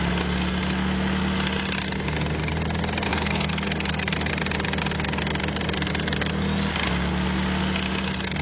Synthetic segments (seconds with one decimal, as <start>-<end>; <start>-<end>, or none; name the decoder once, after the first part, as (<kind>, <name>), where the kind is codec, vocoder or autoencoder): 3.1-4.3 (codec, SNAC)